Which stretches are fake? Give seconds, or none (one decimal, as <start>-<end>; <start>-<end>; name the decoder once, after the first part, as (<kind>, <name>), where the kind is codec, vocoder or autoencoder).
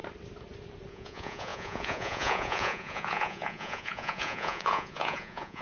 0.9-5.6 (vocoder, Vocos)